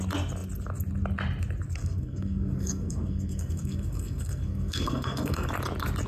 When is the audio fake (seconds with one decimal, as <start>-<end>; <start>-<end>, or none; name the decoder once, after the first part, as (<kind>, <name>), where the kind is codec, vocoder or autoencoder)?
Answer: 1.8-5.5 (codec, SNAC)